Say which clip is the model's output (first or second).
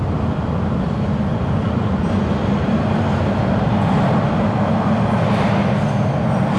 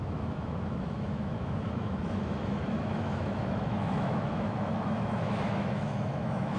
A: second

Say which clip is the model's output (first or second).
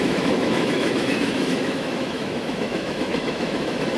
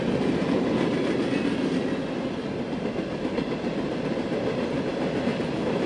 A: first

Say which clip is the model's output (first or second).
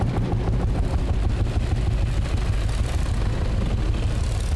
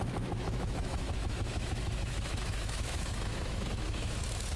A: second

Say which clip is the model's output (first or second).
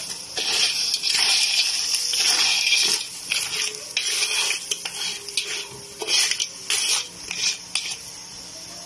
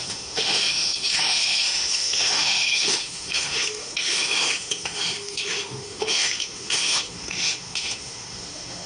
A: second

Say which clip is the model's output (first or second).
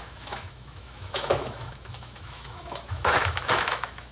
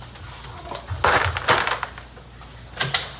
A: first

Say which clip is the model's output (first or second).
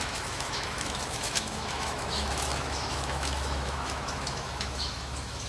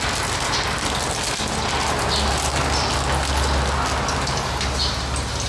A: first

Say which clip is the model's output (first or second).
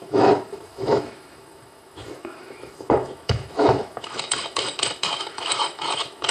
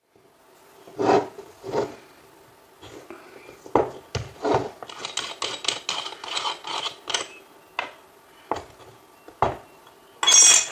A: first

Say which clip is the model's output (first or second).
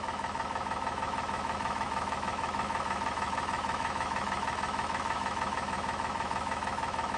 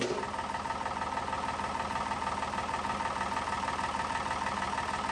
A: first